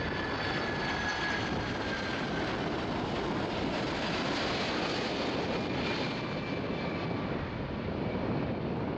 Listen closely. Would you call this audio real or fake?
real